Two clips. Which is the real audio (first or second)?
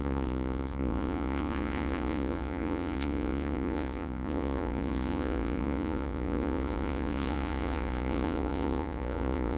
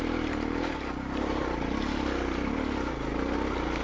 second